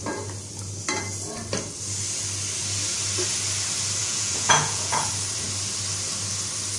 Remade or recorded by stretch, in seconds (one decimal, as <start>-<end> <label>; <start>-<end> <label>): 0.0-4.0 recorded; 4.0-5.1 remade; 5.1-6.8 recorded